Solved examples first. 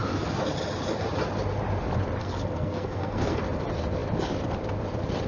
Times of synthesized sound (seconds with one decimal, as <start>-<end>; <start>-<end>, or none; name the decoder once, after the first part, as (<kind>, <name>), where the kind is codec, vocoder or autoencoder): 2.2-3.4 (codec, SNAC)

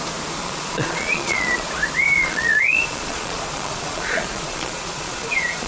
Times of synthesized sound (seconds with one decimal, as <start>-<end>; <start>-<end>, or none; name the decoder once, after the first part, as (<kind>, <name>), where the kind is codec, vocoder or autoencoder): 0.4-1.7 (vocoder, Vocos); 2.2-5.7

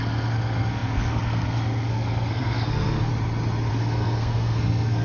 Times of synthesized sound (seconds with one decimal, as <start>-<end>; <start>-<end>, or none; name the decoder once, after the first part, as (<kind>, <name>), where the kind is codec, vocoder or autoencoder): 0.0-3.1 (codec, SNAC); 3.7-5.0

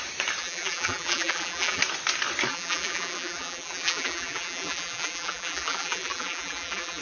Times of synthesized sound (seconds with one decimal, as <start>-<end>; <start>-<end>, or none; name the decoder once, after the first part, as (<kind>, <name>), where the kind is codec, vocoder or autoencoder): 0.4-1.8 (vocoder, BigVGAN v2); 2.5-7.0

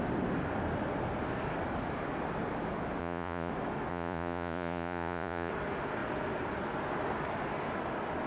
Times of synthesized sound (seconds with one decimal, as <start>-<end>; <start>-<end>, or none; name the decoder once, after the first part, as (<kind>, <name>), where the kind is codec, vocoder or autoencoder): 3.0-3.5 (vocoder, Vocos); 3.9-5.5

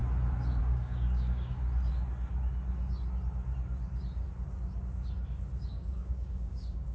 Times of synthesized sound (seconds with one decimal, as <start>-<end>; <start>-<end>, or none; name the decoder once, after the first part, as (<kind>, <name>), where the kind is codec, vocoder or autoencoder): 0.6-1.6 (codec, DAC); 5.7-6.9

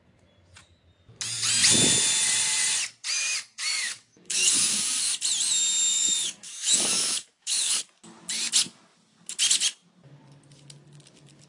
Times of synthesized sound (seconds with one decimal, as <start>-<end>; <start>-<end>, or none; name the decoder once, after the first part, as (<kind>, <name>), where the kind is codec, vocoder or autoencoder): 3.7-5.1 (codec, DAC); 5.9-7.8